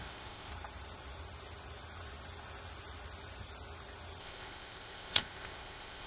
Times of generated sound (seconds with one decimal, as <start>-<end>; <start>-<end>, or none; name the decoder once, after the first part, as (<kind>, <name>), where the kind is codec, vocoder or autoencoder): 0.0-0.5 (codec, ZipCodec); 4.2-6.1